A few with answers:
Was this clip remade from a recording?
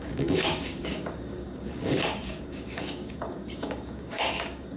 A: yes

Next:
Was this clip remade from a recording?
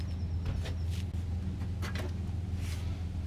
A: no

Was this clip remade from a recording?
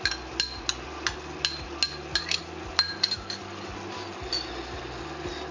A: no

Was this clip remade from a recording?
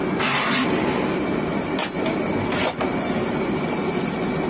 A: no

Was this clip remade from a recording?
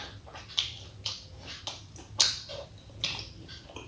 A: no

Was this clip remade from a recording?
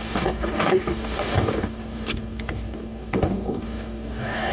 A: yes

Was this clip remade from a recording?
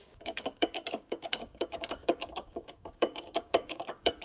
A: yes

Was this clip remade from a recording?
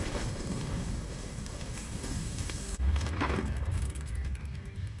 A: yes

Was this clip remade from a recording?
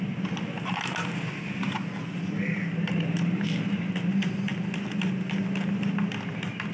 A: no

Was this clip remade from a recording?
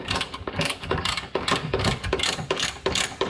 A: yes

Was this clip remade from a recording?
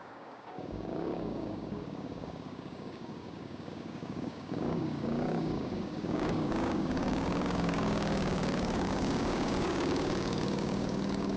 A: yes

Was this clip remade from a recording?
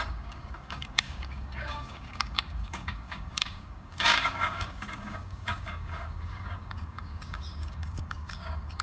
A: yes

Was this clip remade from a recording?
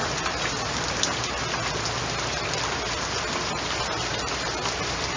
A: no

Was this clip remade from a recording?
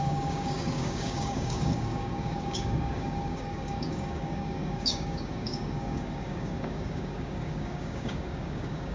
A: yes